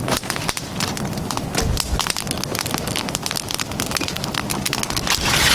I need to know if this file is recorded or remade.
recorded